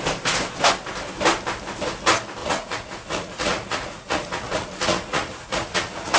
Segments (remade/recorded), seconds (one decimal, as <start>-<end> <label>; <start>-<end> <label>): 0.0-2.4 recorded; 2.4-6.2 remade